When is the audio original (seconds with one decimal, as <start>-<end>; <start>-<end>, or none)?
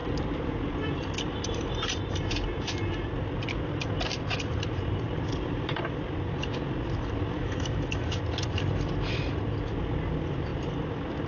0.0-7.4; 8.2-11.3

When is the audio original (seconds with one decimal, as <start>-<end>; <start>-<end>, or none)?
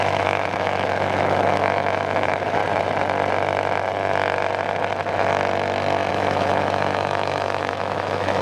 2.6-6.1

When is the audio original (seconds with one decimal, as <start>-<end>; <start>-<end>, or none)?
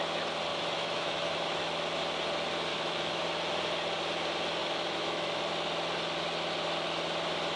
0.0-0.5; 1.6-2.7; 3.2-4.6; 5.4-7.6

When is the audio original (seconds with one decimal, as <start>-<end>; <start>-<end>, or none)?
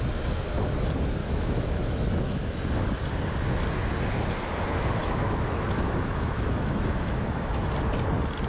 0.0-1.2; 2.5-5.0; 7.7-8.5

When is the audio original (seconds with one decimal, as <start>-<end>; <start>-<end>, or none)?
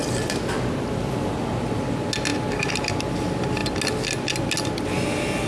0.0-5.5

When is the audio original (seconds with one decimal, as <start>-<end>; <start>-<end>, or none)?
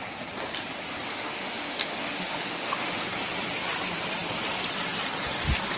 0.0-1.1; 3.0-5.8